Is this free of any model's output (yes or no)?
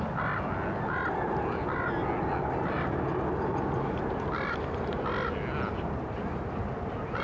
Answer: yes